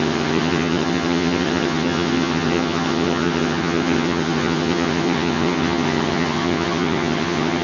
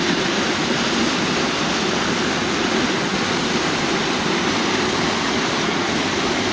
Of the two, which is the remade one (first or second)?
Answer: first